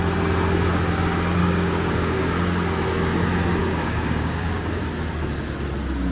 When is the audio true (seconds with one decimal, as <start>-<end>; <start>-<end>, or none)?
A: 0.0-1.4; 2.4-3.6; 4.8-6.1